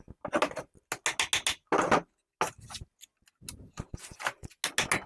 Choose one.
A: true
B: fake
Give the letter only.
A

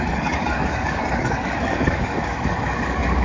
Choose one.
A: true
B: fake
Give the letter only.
B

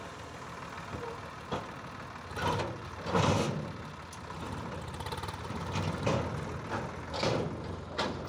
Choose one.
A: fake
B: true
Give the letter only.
B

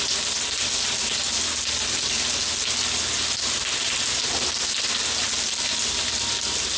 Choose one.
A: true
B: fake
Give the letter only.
A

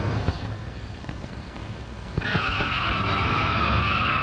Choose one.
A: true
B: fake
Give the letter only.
B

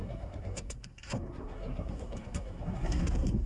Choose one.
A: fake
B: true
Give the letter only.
A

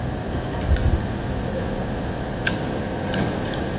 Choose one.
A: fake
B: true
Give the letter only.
B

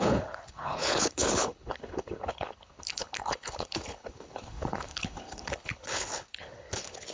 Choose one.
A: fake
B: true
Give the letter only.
A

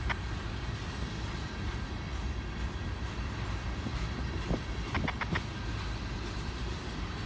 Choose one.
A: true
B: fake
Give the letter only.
B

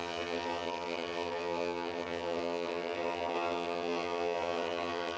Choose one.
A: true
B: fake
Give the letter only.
B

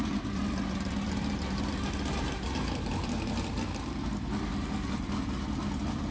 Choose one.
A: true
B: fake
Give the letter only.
A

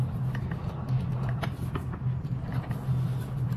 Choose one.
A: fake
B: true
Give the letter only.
B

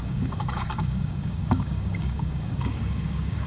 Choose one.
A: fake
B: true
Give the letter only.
A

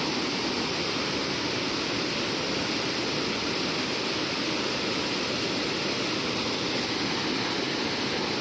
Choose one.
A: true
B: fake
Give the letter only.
A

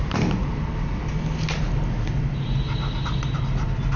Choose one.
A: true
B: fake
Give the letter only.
A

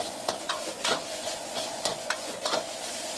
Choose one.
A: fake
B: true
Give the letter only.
A